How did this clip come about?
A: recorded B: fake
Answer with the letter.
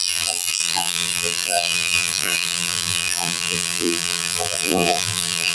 B